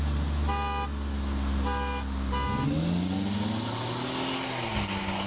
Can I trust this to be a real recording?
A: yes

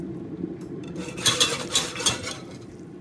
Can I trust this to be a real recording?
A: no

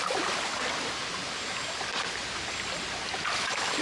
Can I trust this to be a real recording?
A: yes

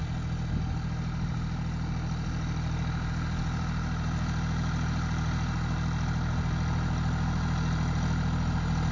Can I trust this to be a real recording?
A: yes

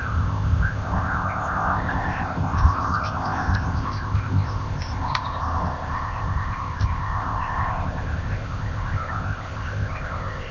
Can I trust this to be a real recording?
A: no